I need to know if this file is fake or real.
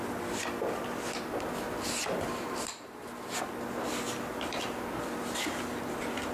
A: real